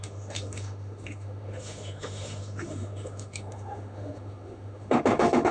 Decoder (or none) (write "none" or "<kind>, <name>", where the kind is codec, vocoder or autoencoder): autoencoder, DAC-VAE